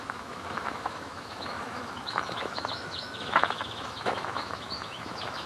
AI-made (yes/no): yes